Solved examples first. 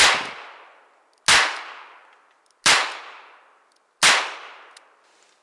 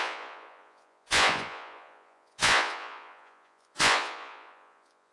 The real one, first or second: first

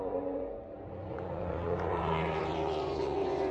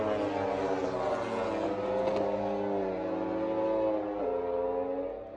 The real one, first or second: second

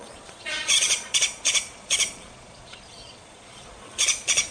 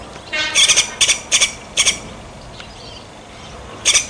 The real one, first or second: second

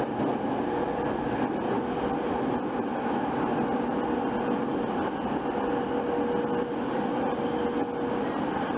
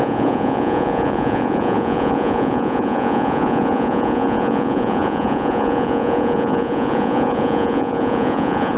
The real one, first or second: first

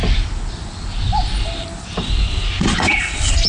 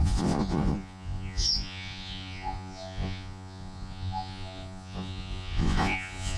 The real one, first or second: first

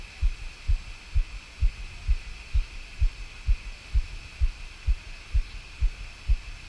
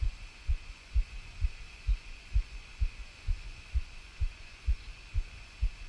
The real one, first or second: first